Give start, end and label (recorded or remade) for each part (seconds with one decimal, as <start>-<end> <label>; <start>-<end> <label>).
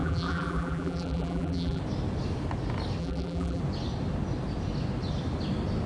0.0-1.8 remade; 1.8-3.0 recorded; 3.0-3.6 remade; 3.6-5.9 recorded